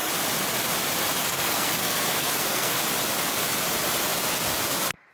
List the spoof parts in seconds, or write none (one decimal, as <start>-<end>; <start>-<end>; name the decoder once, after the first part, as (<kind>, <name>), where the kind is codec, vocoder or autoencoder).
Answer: 1.2-2.8 (codec, SNAC)

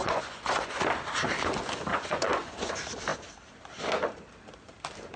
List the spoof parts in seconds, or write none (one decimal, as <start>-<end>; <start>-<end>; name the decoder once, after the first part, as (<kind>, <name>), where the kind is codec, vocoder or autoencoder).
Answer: 0.0-0.8 (vocoder, Vocos); 1.9-2.7

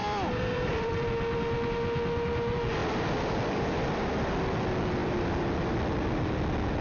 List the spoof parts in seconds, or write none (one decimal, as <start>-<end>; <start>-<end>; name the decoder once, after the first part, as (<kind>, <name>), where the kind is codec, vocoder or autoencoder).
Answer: 0.0-0.9 (vocoder, BigVGAN v2); 2.8-4.3